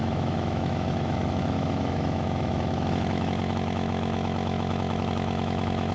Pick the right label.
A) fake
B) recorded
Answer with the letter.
A